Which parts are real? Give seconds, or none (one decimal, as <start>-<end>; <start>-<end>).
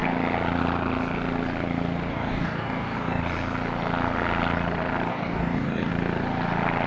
0.0-2.1; 3.2-5.1; 5.9-6.9